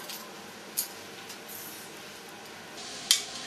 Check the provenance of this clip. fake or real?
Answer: real